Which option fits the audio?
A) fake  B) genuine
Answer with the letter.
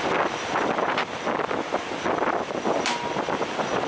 B